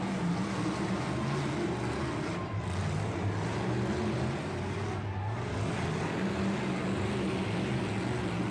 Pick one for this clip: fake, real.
real